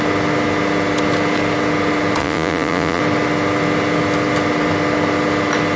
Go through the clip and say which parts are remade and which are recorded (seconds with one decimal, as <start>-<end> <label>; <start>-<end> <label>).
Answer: 0.0-2.2 recorded; 2.2-3.0 remade; 3.0-5.8 recorded